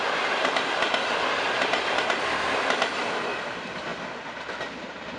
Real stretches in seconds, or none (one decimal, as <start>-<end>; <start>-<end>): 0.0-5.2